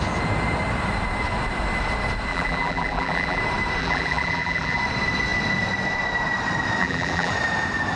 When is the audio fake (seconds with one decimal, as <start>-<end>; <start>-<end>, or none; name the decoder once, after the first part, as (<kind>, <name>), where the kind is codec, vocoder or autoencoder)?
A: 2.3-3.4 (vocoder, BigVGAN v2); 3.8-4.8; 6.8-7.3